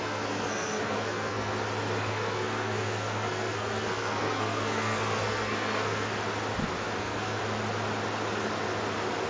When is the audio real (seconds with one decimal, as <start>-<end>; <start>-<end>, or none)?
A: 1.5-2.1; 6.1-7.0; 7.4-9.3